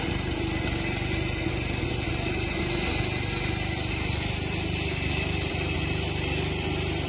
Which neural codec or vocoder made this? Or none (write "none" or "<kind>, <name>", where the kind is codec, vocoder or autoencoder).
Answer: none